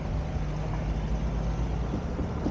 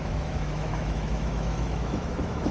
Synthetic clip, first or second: second